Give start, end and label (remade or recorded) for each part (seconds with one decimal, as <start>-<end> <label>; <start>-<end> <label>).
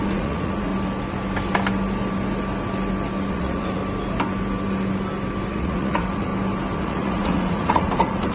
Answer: 0.0-0.7 remade; 0.7-3.3 recorded; 3.3-3.8 remade; 3.8-5.5 recorded; 5.5-6.3 remade; 6.3-6.8 recorded; 6.8-8.3 remade